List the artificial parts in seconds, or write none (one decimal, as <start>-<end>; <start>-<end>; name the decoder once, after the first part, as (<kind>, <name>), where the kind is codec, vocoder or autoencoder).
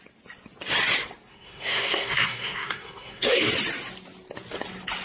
1.3-3.5 (codec, SNAC)